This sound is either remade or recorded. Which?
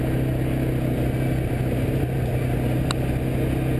recorded